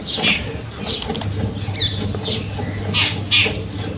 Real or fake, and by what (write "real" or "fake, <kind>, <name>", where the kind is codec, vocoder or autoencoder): real